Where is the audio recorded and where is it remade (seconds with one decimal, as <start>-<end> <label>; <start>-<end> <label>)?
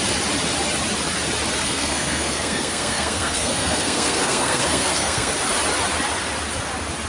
0.0-1.6 recorded; 1.6-5.3 remade; 5.3-7.1 recorded